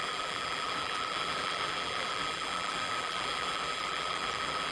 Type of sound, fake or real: fake